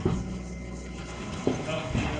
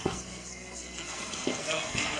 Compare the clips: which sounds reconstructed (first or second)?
second